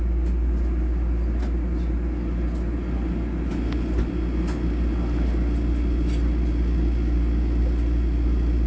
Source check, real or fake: real